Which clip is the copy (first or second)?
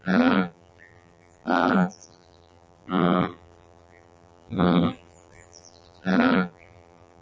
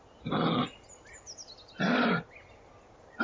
first